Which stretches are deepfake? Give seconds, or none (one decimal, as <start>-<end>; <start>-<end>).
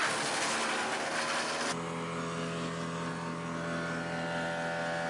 none